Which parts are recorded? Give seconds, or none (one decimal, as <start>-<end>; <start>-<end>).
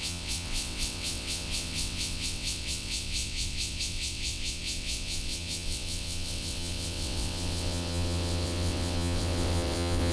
none